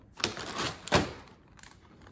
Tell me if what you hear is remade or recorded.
recorded